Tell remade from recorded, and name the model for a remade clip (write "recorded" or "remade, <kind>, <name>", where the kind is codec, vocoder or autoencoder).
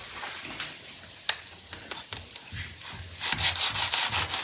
recorded